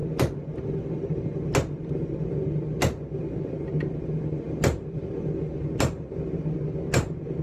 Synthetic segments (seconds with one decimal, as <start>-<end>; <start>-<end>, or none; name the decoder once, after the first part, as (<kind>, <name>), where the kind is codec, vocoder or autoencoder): none